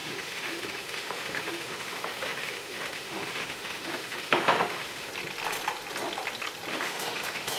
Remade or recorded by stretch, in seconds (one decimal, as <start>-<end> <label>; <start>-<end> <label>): 0.0-5.1 remade; 5.1-6.7 recorded; 6.7-7.6 remade